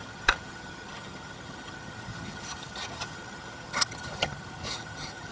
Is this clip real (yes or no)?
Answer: no